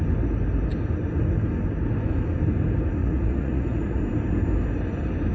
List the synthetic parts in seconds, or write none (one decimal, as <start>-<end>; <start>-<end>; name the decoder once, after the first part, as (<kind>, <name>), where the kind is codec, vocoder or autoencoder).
3.0-4.0 (vocoder, Vocos)